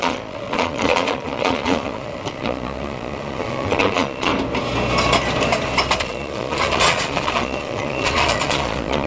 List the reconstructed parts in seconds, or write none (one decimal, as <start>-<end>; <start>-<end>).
0.0-4.3; 6.0-9.1